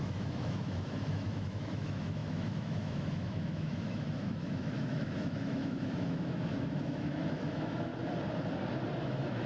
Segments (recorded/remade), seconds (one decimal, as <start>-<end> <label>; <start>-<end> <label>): 0.0-7.9 remade; 7.9-9.0 recorded; 9.0-9.5 remade